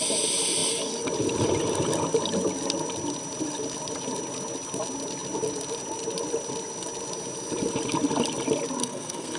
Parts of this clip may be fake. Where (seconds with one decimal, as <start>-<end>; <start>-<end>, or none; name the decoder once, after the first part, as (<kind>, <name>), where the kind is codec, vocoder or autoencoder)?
8.8-9.4 (codec, SNAC)